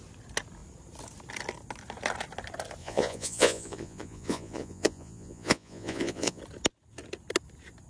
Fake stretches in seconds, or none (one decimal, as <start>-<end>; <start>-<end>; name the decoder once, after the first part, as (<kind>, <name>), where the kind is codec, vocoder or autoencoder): 2.8-6.4 (vocoder, Vocos)